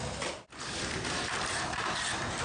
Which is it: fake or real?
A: fake